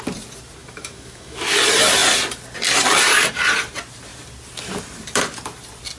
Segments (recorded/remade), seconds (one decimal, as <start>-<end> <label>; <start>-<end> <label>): 0.0-0.6 recorded; 0.6-1.6 remade; 1.6-6.0 recorded